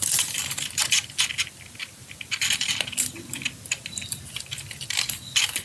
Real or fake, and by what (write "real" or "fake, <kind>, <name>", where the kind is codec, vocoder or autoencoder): real